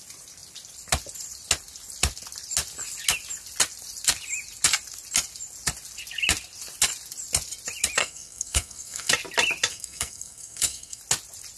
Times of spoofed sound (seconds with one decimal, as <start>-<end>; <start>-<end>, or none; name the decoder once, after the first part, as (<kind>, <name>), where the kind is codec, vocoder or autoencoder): 8.0-9.1 (codec, SNAC); 9.7-11.0